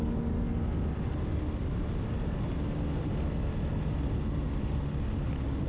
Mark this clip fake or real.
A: real